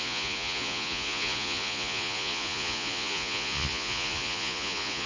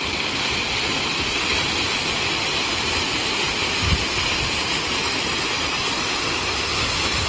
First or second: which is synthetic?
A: first